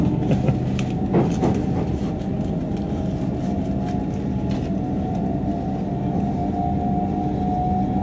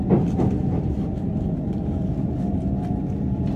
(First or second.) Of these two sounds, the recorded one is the first